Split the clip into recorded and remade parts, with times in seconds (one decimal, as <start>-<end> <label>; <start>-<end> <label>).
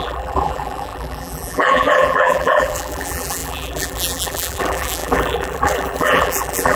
0.0-6.8 remade